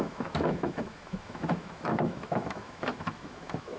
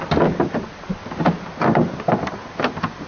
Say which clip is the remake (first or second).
first